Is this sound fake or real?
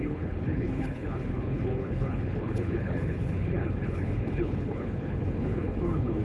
fake